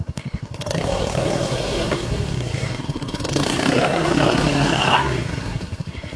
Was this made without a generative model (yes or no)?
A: no